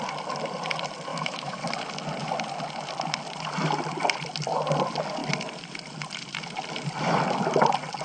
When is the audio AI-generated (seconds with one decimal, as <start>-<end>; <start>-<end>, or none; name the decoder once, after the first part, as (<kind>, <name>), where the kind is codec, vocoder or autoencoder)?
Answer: 1.1-1.6 (autoencoder, DAC-VAE)